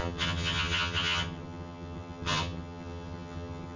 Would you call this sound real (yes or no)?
no